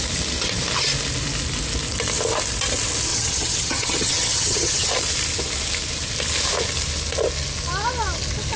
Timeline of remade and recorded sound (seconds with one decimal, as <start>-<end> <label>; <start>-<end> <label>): 0.0-3.1 recorded; 3.1-4.9 remade; 4.9-8.6 recorded